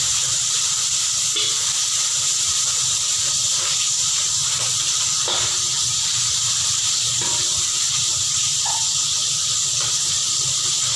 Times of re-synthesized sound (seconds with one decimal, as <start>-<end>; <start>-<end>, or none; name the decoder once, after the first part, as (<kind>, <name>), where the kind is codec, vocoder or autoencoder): 0.0-11.0 (vocoder, BigVGAN v2)